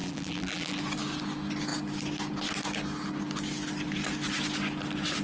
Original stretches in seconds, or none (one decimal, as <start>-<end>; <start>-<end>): 0.8-5.2